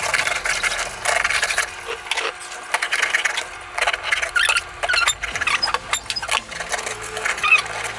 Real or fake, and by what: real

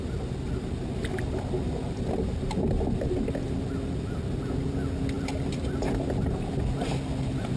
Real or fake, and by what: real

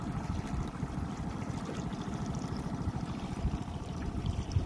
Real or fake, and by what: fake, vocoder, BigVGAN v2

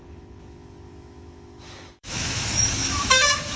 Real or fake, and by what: fake, autoencoder, DAC-VAE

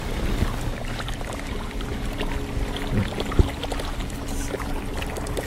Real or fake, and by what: real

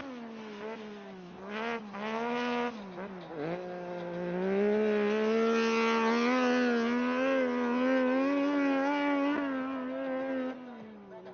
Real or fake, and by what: real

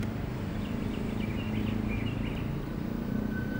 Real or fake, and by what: real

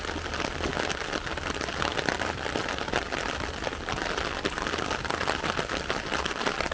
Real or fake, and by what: real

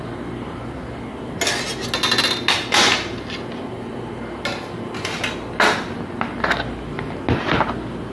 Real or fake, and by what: real